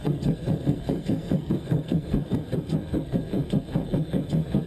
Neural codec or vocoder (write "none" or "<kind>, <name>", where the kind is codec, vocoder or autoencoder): codec, SNAC